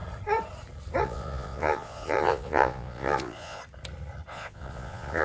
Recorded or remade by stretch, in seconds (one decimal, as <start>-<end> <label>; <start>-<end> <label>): 0.0-1.0 recorded; 1.0-3.6 remade; 3.6-4.3 recorded; 4.3-5.2 remade